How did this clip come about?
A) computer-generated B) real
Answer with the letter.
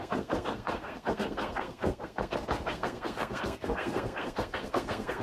A